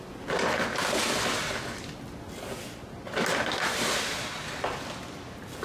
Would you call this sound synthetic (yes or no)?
no